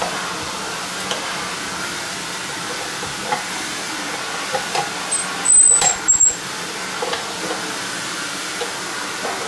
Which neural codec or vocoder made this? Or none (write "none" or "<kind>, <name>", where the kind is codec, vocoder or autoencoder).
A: none